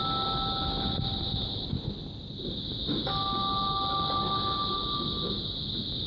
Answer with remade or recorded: recorded